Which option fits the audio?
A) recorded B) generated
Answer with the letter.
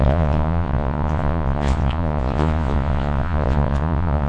B